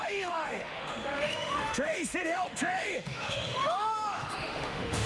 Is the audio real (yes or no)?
no